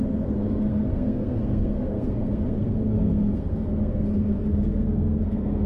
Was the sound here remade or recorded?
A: remade